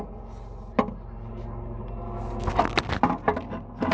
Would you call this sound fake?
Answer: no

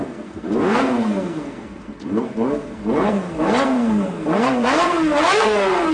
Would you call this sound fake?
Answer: yes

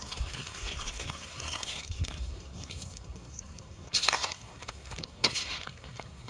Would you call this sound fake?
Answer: yes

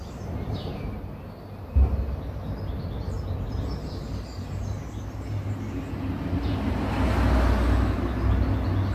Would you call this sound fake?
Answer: no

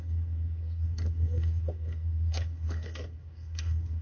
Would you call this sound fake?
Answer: yes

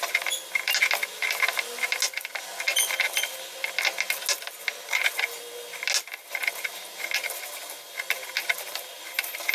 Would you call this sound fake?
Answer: no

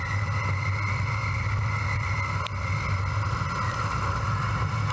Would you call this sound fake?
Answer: no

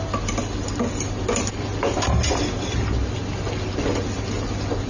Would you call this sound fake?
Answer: no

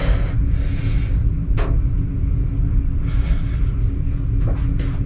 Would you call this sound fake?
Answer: no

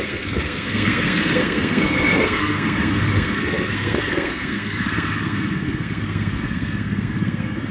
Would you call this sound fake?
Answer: yes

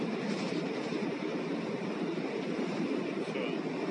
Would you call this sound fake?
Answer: no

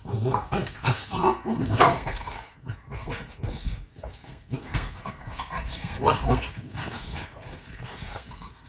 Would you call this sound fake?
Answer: yes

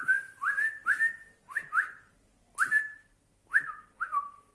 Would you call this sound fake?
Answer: no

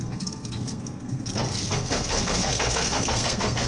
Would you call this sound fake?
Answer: yes